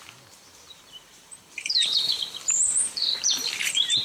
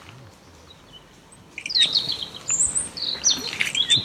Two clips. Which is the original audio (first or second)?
second